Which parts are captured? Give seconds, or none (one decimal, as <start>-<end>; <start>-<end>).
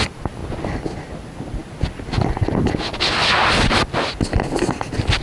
0.0-5.2